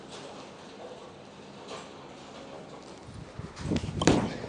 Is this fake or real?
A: real